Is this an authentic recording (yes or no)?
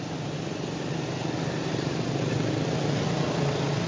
yes